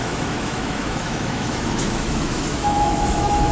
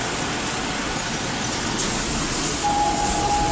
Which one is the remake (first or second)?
first